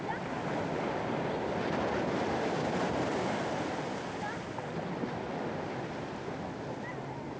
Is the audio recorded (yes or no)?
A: yes